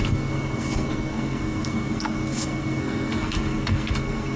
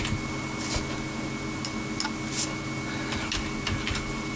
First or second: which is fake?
first